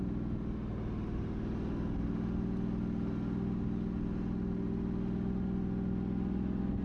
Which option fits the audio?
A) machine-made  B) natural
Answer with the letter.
B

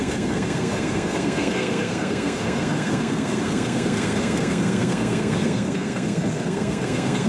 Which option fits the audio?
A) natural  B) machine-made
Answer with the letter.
B